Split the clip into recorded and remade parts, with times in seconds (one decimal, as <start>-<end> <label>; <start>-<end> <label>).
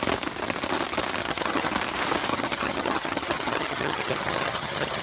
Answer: 0.0-1.2 recorded; 1.2-1.7 remade; 1.7-2.3 recorded; 2.3-5.0 remade